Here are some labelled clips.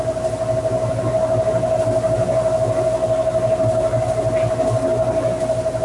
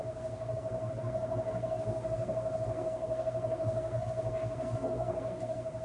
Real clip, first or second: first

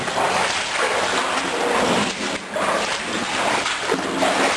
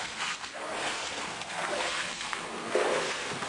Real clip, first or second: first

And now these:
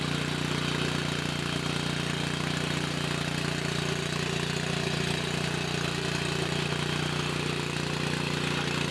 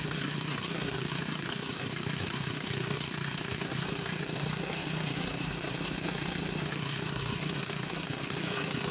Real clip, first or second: first